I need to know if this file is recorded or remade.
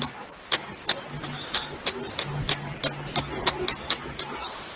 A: recorded